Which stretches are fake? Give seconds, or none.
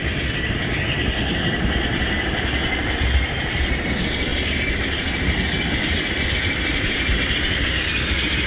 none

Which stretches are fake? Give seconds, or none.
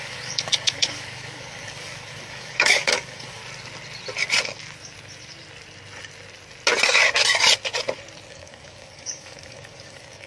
0.0-3.4 (codec, DAC); 8.3-10.3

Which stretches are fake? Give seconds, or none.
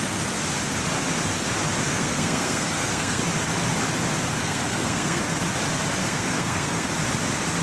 1.9-3.2 (codec, SNAC); 4.4-5.2; 6.0-6.9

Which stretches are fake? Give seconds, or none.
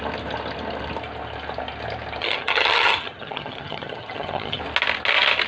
2.2-4.6 (vocoder, HiFi-GAN)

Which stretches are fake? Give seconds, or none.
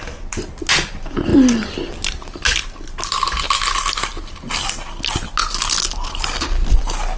none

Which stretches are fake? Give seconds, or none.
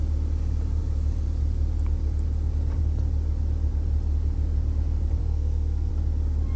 5.2-5.9 (codec, SNAC)